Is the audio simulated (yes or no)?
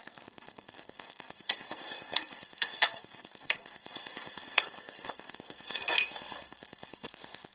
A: yes